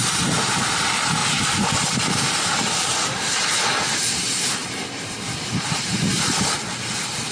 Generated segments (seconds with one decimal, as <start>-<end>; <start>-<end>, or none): none